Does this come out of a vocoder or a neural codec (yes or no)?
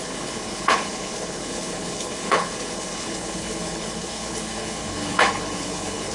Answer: yes